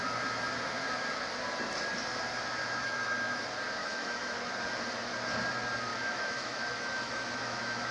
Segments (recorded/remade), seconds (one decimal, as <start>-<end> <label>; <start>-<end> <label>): 0.0-2.6 recorded; 2.6-3.4 remade; 3.4-3.8 recorded; 3.8-4.5 remade; 4.5-5.9 recorded; 5.9-7.9 remade